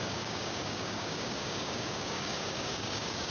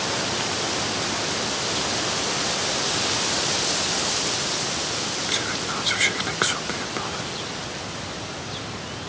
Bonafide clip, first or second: second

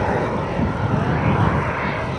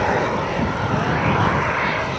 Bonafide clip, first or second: first